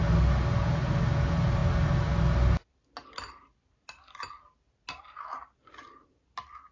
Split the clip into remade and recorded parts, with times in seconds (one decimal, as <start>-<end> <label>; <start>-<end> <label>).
0.0-6.7 recorded